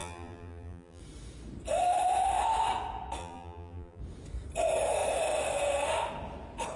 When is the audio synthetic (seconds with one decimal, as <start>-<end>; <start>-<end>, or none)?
0.0-1.0; 3.2-4.0